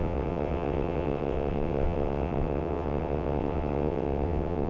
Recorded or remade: remade